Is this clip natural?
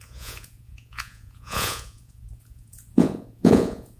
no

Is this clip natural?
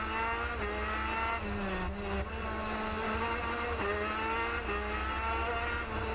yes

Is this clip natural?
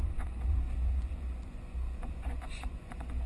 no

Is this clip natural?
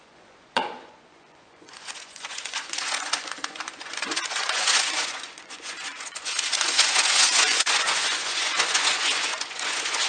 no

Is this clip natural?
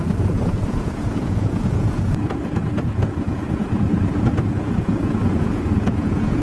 no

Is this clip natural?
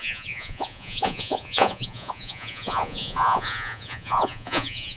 no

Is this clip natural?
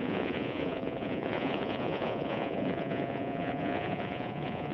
no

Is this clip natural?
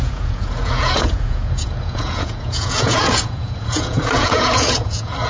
no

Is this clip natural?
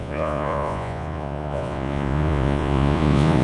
no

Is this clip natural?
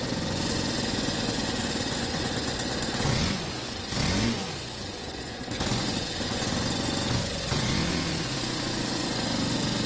no